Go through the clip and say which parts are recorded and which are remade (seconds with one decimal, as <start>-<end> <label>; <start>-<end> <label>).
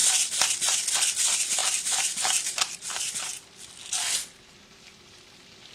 0.0-1.6 recorded; 1.6-3.3 remade; 3.3-5.7 recorded